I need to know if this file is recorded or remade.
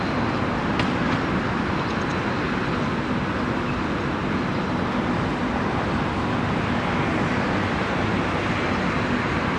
recorded